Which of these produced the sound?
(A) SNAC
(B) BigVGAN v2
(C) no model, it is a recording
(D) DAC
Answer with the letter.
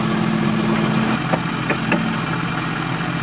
C